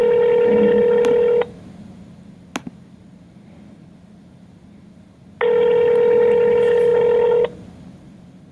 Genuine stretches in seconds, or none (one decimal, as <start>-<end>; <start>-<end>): 0.0-8.5